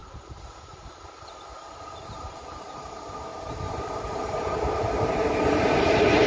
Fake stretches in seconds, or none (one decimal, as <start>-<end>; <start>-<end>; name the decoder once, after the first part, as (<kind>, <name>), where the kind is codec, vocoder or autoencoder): 1.7-6.3 (vocoder, BigVGAN v2)